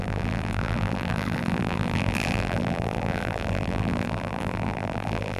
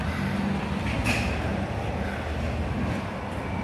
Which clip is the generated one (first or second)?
first